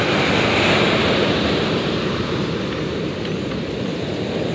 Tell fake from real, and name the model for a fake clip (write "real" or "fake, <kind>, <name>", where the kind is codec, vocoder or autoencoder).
real